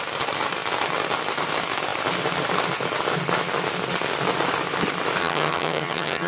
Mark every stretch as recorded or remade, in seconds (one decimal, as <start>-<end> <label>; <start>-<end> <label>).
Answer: 0.0-5.2 recorded; 5.2-6.3 remade